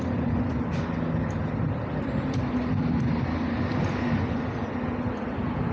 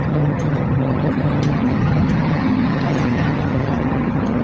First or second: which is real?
first